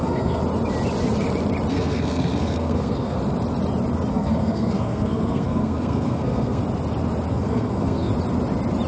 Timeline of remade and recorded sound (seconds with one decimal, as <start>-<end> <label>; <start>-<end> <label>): 0.0-0.4 remade; 0.4-1.7 recorded; 1.7-3.2 remade; 3.2-4.1 recorded; 4.1-6.6 remade; 6.6-7.3 recorded; 7.3-8.1 remade; 8.1-8.9 recorded